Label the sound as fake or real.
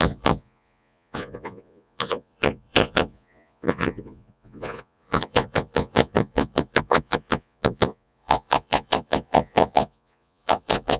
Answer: fake